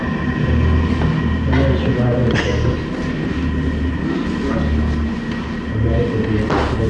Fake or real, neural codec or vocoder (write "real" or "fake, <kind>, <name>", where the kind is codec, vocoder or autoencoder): real